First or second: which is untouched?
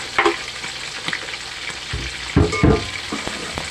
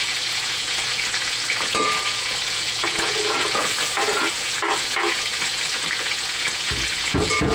first